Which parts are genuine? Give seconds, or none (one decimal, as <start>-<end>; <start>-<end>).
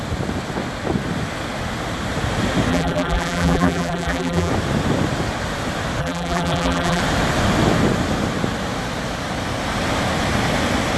0.0-2.7; 4.5-6.0; 7.0-11.0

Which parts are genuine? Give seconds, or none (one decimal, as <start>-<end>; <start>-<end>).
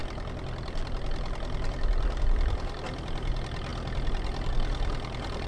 0.0-5.5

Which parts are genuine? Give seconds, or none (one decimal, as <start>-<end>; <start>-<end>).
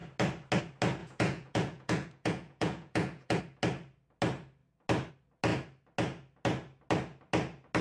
0.0-1.0; 3.4-7.8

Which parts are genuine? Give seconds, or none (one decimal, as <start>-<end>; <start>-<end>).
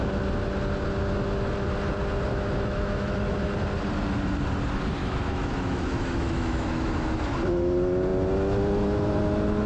0.0-2.3; 3.3-5.0; 6.9-9.7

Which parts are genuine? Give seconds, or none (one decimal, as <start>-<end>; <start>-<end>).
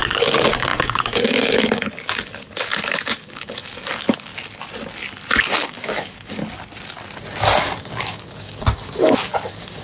4.3-5.4; 6.4-7.8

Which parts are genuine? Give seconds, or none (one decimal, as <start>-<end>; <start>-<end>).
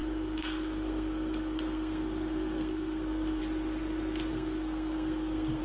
3.4-4.3